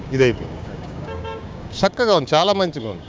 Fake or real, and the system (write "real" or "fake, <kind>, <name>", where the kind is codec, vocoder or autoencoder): fake, codec, DAC